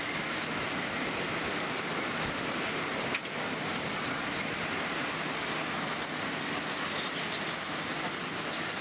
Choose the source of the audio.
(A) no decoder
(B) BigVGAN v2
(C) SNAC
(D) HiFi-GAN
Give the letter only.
A